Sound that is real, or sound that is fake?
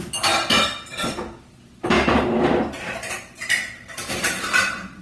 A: real